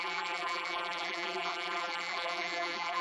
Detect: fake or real fake